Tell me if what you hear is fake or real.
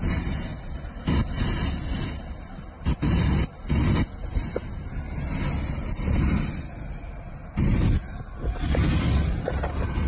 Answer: real